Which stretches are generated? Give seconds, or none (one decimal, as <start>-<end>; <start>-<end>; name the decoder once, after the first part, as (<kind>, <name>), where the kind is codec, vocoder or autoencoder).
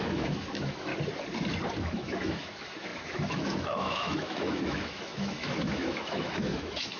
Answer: 0.0-0.9 (autoencoder, DAC-VAE); 1.8-7.0